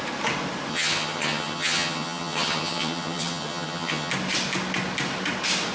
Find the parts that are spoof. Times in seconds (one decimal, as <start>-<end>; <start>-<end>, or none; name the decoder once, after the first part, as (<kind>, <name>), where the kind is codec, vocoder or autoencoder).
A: 0.7-4.1 (vocoder, HiFi-GAN)